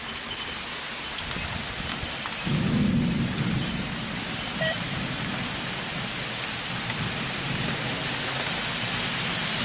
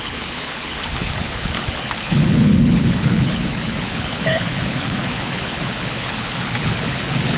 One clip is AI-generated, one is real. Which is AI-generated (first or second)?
second